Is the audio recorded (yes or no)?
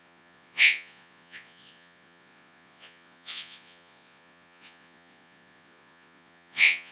no